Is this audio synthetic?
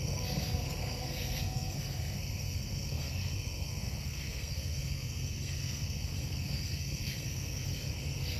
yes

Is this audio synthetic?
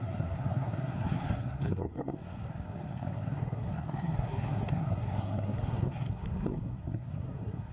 yes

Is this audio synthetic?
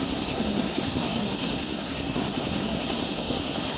yes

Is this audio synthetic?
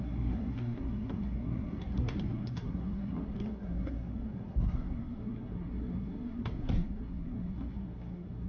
yes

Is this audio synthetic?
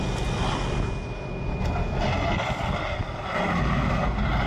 no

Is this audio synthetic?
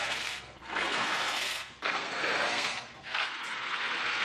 yes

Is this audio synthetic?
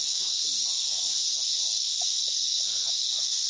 yes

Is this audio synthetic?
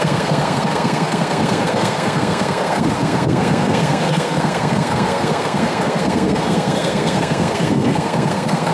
yes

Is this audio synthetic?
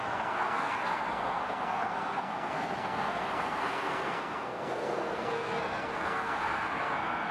yes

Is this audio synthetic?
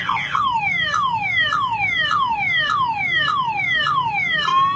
no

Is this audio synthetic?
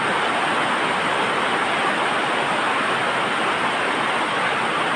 no